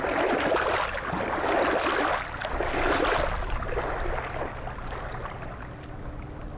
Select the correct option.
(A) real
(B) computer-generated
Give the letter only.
A